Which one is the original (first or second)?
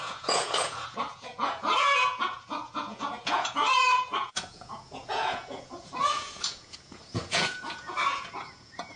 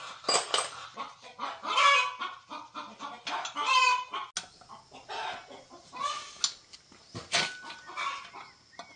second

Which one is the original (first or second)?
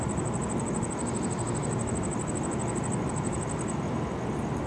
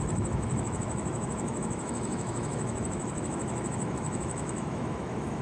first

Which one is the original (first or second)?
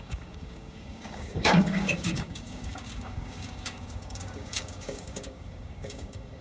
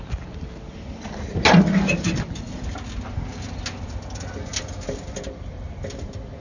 second